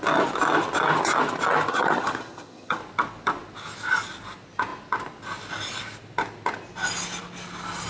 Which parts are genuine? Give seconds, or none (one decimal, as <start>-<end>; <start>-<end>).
0.0-1.7; 2.8-7.9

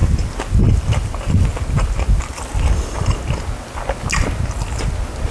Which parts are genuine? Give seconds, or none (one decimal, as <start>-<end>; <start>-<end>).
0.0-5.3